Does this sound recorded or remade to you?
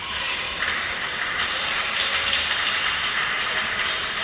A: remade